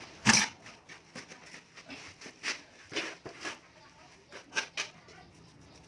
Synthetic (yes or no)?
no